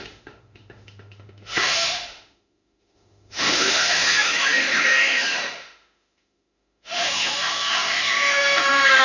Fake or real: fake